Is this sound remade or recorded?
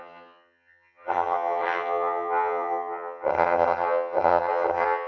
remade